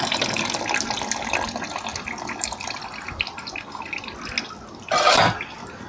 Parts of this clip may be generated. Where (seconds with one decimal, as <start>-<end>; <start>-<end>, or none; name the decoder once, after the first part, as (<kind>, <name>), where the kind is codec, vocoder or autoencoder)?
none